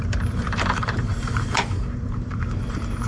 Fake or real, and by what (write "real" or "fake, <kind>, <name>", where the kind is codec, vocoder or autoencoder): fake, vocoder, BigVGAN v2